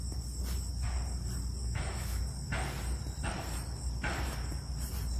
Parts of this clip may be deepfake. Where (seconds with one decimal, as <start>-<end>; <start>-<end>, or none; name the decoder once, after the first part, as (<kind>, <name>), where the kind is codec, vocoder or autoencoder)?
1.6-2.2 (autoencoder, DAC-VAE)